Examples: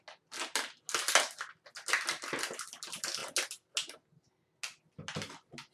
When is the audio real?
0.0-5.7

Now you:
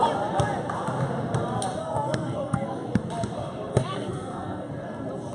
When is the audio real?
0.0-1.8; 3.1-3.7; 4.7-5.3

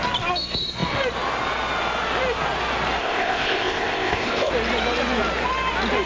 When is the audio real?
0.0-3.0; 4.5-6.1